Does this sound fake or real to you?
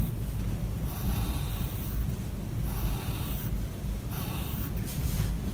real